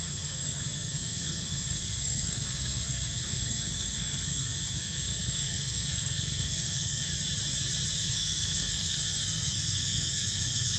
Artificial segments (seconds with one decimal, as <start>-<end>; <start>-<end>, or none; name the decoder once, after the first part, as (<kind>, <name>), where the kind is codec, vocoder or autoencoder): 0.0-7.1 (codec, SNAC); 7.9-10.8

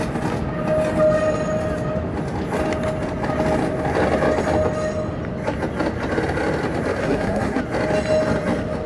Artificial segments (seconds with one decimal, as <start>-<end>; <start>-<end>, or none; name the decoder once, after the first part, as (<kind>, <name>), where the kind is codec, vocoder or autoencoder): 7.0-7.6 (codec, SNAC)

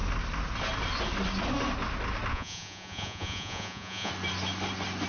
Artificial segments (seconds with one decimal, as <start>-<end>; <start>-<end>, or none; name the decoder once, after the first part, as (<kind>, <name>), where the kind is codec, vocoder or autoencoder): 2.3-4.1 (vocoder, Vocos)

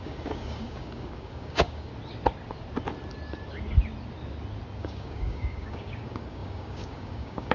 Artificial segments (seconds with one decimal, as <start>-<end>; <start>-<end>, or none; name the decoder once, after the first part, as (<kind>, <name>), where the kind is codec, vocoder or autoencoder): 0.0-1.9 (codec, DAC); 4.8-7.5